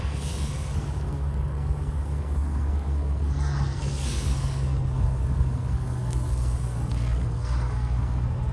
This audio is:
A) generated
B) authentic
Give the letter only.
A